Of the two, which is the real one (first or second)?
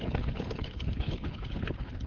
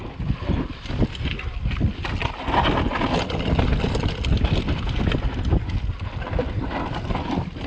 second